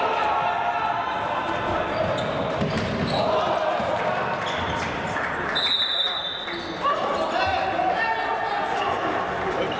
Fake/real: real